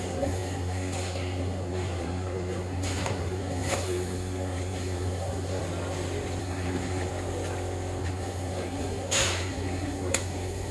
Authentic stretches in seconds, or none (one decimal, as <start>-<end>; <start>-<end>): 5.6-6.4; 7.1-8.0